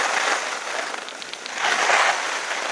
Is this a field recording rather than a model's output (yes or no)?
yes